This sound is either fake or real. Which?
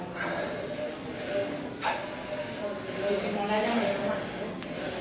real